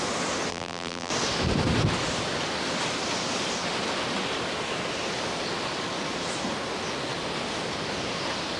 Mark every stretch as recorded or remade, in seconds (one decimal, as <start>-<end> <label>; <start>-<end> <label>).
0.0-0.5 recorded; 0.5-1.1 remade; 1.1-8.6 recorded